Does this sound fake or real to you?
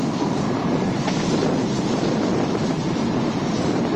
real